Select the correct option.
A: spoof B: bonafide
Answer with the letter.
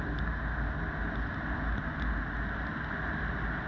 B